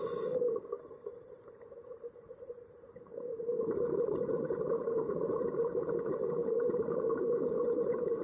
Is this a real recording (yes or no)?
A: no